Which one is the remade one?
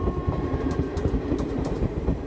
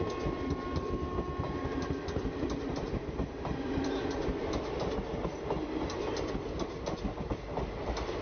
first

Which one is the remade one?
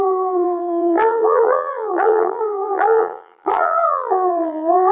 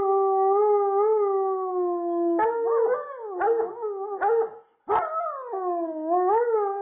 first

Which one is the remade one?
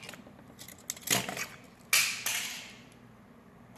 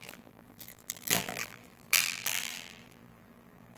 second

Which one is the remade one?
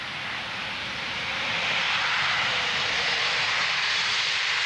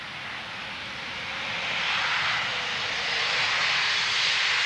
first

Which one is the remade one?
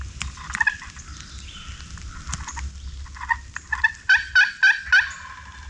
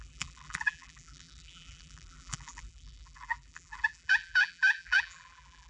second